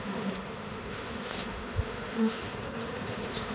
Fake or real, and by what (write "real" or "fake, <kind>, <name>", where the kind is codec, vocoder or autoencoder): fake, autoencoder, DAC-VAE